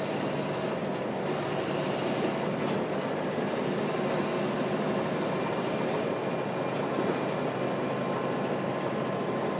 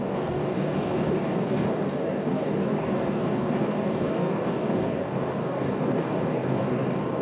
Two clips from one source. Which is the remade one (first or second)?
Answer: second